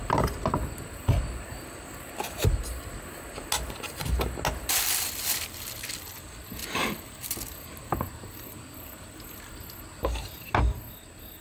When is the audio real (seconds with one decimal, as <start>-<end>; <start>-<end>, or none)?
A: 0.0-6.6; 9.2-11.4